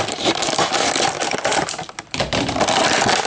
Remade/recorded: remade